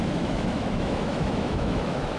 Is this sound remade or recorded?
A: remade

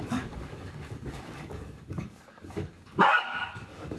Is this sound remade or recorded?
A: remade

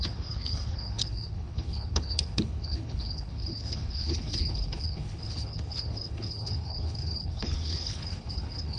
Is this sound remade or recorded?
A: remade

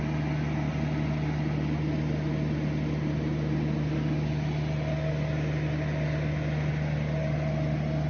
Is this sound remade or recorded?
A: recorded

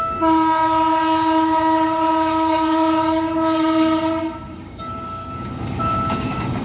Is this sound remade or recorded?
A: remade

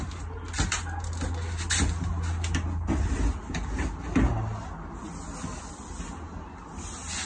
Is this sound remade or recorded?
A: recorded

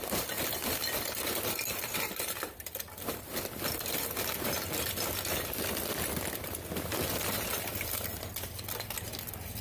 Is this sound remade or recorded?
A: recorded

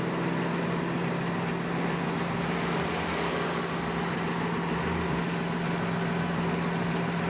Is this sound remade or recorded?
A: recorded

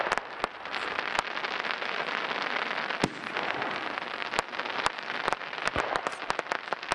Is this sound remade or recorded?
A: recorded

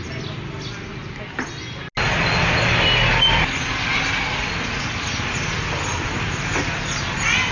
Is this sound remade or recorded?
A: recorded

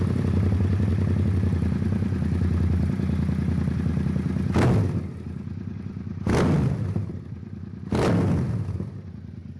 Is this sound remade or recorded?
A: recorded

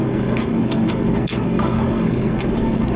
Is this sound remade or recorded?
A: remade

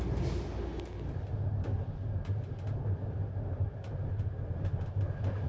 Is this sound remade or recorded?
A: recorded